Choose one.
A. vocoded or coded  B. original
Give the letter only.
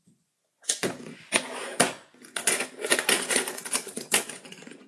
A